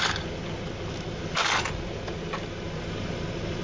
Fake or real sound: real